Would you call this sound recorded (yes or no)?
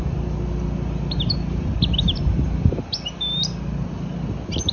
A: yes